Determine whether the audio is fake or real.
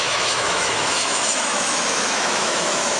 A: fake